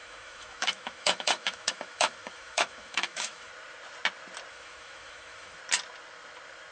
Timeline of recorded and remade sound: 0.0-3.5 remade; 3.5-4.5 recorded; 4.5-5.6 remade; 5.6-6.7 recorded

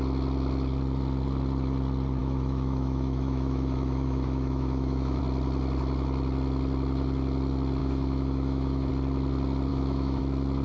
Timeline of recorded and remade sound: 0.0-2.2 recorded; 2.2-5.2 remade; 5.2-7.8 recorded; 7.8-8.9 remade; 8.9-9.7 recorded; 9.7-10.2 remade; 10.2-10.6 recorded

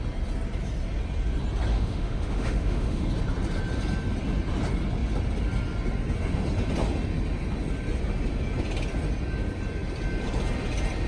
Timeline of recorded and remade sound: 0.0-1.7 recorded; 1.7-3.1 remade; 3.1-11.1 recorded

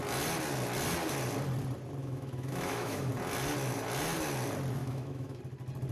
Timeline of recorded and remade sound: 0.0-2.0 recorded; 2.0-3.1 remade; 3.1-4.8 recorded; 4.8-5.4 remade; 5.4-5.9 recorded

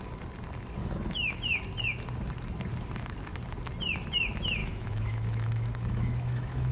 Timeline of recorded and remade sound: 0.0-0.8 recorded; 0.8-1.4 remade; 1.4-4.6 recorded; 4.6-6.7 remade

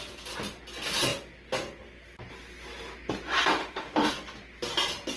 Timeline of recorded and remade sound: 0.0-3.6 recorded; 3.6-4.1 remade; 4.1-5.2 recorded

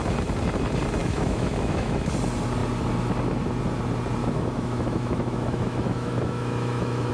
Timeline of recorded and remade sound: 0.0-1.0 recorded; 1.0-2.1 remade; 2.1-4.2 recorded; 4.2-7.1 remade